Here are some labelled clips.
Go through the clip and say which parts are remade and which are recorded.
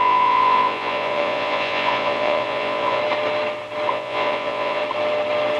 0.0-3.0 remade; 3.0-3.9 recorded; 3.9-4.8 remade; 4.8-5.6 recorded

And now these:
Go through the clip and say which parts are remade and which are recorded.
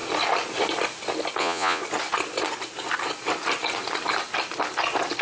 0.0-1.4 recorded; 1.4-1.8 remade; 1.8-5.2 recorded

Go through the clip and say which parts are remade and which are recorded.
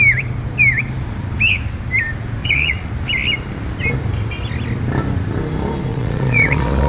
0.0-2.4 recorded; 2.4-2.9 remade; 2.9-5.9 recorded; 5.9-6.9 remade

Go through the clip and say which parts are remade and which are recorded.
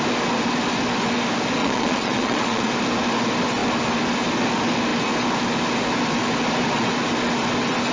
0.0-1.6 recorded; 1.6-2.7 remade; 2.7-7.9 recorded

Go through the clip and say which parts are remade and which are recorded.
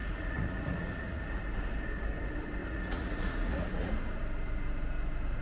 0.0-1.4 remade; 1.4-2.6 recorded; 2.6-3.9 remade; 3.9-5.4 recorded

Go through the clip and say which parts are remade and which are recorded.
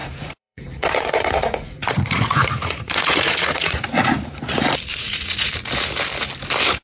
0.0-4.1 remade; 4.1-4.9 recorded; 4.9-5.5 remade; 5.5-6.8 recorded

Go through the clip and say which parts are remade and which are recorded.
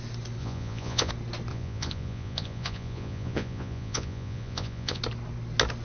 0.0-0.4 recorded; 0.4-1.1 remade; 1.1-1.5 recorded; 1.5-5.0 remade; 5.0-5.8 recorded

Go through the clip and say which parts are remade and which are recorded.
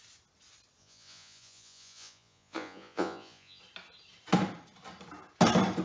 0.0-0.8 recorded; 0.8-3.6 remade; 3.6-5.8 recorded